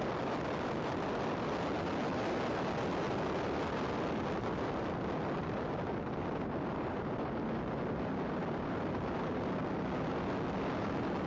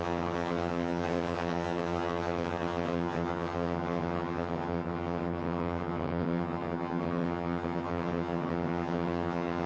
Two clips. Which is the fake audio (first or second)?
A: second